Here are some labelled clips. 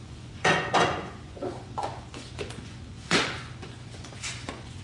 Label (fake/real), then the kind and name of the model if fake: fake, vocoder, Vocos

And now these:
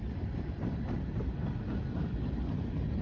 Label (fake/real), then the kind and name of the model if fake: real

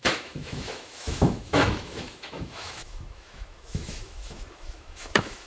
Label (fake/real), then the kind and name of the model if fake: fake, autoencoder, DAC-VAE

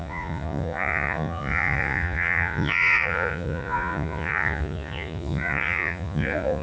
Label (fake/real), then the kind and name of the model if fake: fake, vocoder, Vocos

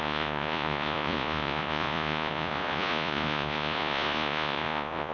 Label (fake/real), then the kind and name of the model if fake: fake, vocoder, Vocos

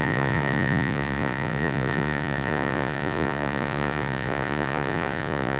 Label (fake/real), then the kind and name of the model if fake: fake, vocoder, Vocos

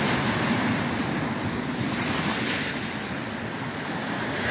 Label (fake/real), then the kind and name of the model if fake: real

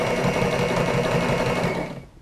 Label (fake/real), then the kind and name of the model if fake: real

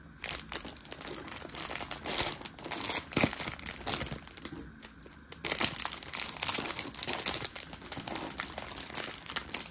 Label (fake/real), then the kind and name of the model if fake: real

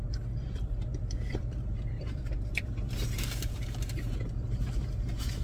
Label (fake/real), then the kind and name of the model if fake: fake, vocoder, BigVGAN v2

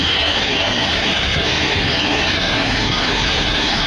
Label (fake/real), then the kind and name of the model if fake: fake, codec, SNAC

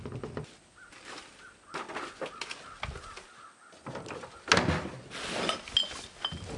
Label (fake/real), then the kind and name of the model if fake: real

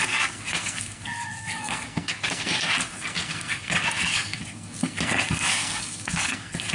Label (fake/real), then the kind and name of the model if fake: fake, codec, SNAC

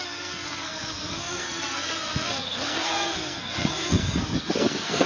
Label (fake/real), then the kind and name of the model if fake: fake, codec, SNAC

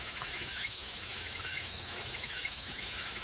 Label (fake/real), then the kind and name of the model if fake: fake, autoencoder, DAC-VAE